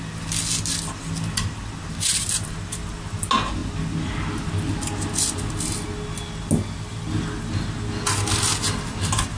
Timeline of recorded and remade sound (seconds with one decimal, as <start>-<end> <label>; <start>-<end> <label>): 0.0-9.4 recorded